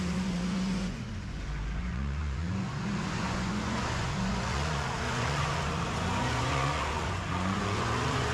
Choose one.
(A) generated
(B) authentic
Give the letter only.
A